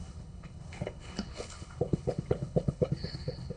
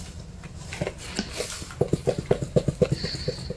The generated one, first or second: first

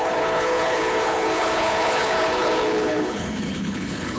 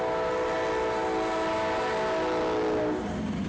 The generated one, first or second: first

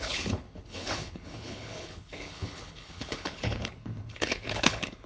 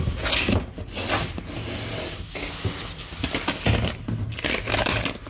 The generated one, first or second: first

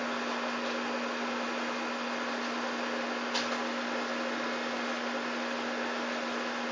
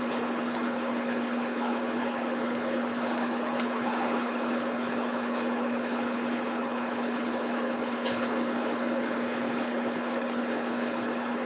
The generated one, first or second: second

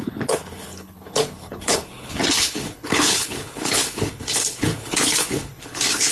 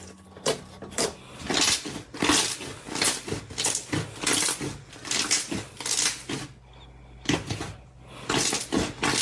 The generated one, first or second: first